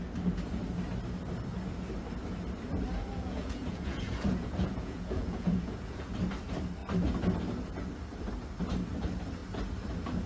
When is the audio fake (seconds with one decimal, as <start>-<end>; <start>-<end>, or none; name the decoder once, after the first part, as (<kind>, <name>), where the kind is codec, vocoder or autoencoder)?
3.0-6.1 (vocoder, Vocos)